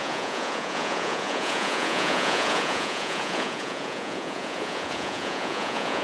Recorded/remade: remade